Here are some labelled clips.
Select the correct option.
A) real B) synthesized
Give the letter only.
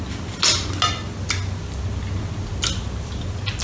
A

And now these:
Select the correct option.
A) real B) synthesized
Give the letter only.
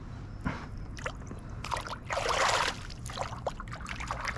A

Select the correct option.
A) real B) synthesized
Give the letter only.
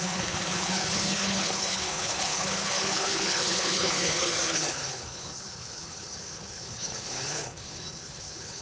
B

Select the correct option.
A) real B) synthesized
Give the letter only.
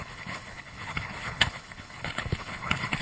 B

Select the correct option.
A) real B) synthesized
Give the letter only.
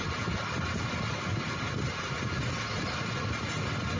A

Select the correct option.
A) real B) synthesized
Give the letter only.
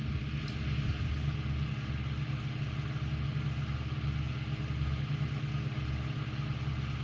A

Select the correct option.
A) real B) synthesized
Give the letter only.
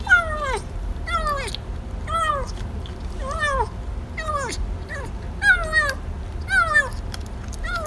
A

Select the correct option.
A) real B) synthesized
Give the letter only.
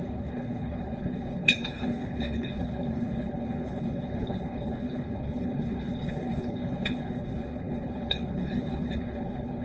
B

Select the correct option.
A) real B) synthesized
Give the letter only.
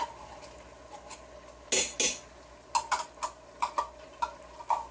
A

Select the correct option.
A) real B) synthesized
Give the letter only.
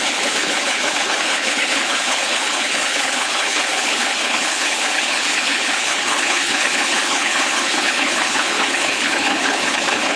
B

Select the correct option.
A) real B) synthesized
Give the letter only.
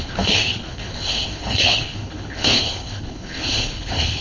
B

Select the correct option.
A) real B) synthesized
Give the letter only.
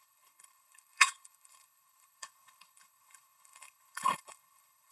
B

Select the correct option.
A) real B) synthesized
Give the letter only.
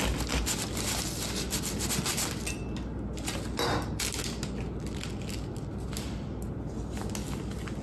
A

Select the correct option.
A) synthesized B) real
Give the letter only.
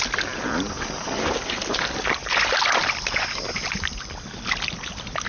B